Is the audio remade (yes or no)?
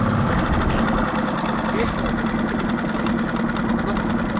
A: no